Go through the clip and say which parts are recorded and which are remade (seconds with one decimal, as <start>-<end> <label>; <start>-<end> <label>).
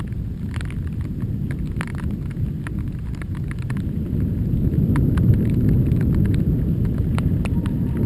0.0-8.1 recorded